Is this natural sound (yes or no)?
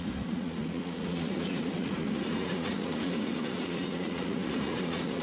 no